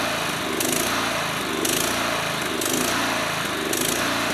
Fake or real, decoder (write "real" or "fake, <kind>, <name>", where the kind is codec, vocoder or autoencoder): real